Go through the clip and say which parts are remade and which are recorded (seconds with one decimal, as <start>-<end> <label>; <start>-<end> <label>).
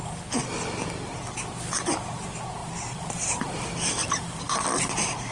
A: 0.0-0.4 recorded; 0.4-1.2 remade; 1.2-2.6 recorded; 2.6-4.8 remade; 4.8-5.3 recorded